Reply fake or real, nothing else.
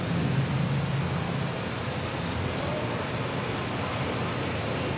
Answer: real